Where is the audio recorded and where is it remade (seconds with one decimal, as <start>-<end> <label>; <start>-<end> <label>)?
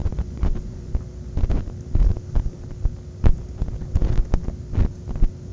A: 0.0-0.9 remade; 0.9-5.5 recorded